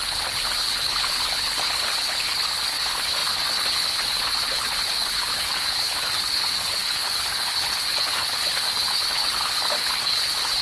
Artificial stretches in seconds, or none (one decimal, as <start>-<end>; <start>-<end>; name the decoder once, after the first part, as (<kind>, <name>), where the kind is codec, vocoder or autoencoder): 0.0-10.6 (codec, HILCodec)